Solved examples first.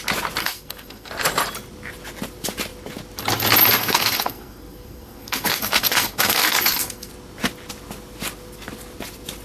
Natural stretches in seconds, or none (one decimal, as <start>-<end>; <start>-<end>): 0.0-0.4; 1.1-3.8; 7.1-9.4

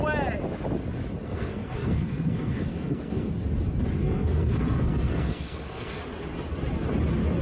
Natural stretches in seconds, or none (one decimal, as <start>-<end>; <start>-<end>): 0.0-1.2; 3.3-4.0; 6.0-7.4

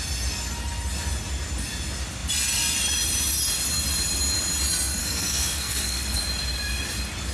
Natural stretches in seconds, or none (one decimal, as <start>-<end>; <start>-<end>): 0.0-5.0; 6.2-7.3